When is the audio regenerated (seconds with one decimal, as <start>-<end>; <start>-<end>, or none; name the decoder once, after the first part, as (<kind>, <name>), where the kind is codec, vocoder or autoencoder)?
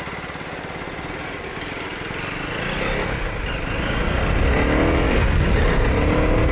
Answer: none